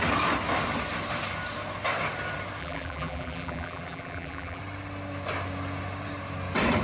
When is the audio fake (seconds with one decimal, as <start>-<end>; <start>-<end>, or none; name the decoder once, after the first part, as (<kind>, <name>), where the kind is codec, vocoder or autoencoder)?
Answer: 2.6-4.6 (vocoder, BigVGAN v2)